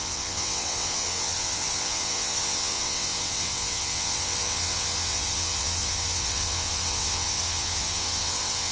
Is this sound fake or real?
fake